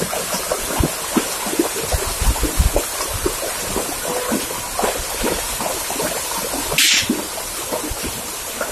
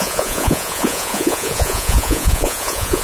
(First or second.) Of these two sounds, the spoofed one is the second